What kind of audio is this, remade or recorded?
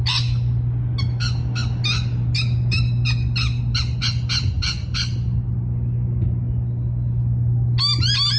recorded